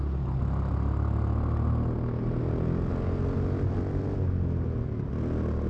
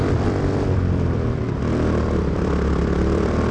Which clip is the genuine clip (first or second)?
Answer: first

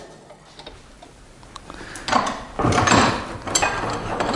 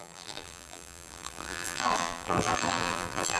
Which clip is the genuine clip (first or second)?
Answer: first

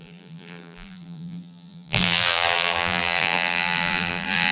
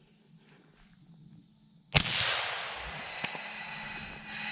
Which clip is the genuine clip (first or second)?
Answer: second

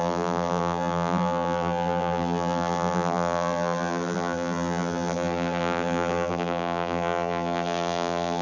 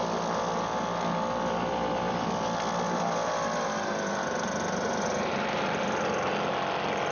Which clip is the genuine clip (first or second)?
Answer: second